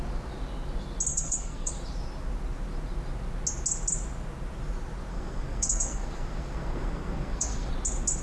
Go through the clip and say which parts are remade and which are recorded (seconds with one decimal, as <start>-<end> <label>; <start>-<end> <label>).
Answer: 0.0-1.1 recorded; 1.1-1.7 remade; 1.7-5.1 recorded; 5.1-7.7 remade; 7.7-8.2 recorded